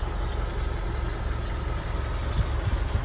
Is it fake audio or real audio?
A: real